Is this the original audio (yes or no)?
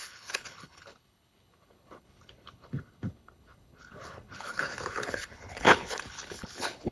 no